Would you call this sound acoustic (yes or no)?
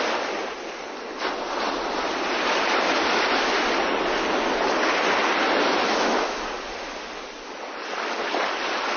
yes